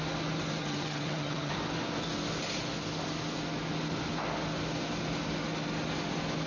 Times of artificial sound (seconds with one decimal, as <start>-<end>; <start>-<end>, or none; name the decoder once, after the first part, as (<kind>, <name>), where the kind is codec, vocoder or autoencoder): 0.6-1.5 (vocoder, HiFi-GAN)